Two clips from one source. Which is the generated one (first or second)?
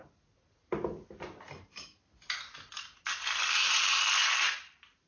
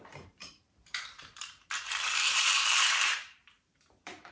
second